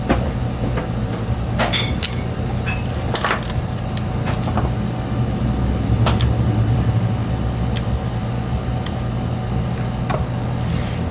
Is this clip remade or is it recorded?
recorded